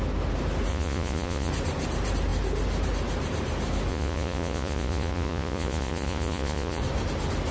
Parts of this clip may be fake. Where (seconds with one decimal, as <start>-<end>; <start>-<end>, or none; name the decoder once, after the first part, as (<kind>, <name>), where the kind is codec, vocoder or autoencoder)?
0.7-1.5 (vocoder, Vocos); 3.9-6.8